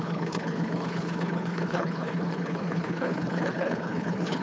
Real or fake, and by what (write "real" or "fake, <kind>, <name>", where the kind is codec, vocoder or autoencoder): fake, codec, HILCodec